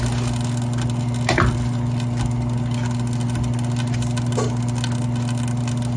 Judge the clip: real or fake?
real